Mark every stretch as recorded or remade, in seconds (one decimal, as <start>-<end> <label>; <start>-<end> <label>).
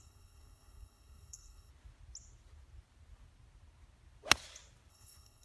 0.0-1.7 remade; 1.7-4.9 recorded; 4.9-5.4 remade